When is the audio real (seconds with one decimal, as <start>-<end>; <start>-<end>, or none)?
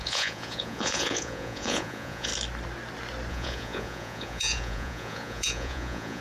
2.3-3.3